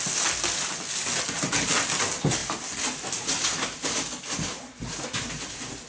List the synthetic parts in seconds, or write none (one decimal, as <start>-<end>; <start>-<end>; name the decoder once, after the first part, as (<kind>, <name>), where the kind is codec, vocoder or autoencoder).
none